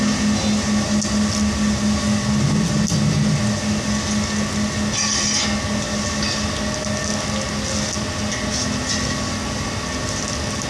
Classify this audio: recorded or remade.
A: recorded